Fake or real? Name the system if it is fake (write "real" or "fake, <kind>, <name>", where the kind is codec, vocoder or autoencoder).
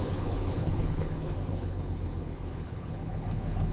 fake, codec, HILCodec